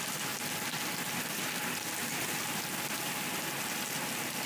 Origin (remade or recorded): recorded